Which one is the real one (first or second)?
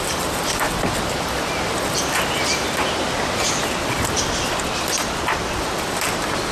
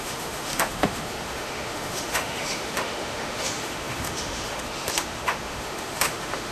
first